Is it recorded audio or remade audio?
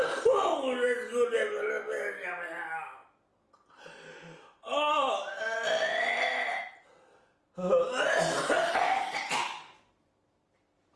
recorded